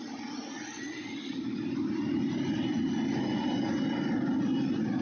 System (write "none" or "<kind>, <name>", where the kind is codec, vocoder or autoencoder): vocoder, BigVGAN v2